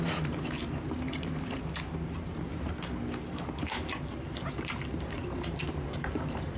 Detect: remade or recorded remade